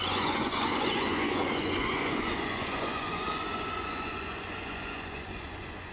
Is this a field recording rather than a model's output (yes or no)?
no